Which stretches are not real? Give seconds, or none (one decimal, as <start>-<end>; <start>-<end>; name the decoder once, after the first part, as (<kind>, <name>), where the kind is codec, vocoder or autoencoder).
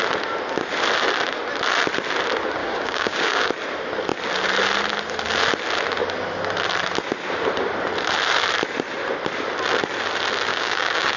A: 2.6-3.5 (codec, DAC); 10.5-11.2